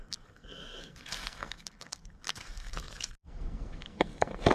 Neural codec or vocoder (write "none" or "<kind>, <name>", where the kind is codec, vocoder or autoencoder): codec, SNAC